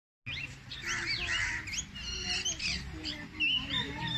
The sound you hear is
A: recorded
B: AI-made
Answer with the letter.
A